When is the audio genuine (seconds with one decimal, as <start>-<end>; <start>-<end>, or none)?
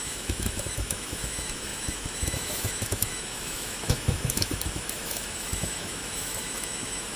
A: none